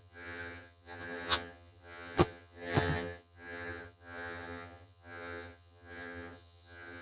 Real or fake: fake